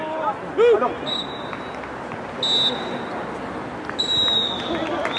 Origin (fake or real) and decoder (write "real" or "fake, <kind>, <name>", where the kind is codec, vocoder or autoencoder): real